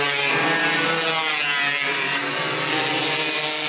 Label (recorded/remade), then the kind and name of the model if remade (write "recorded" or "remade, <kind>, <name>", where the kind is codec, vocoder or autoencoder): recorded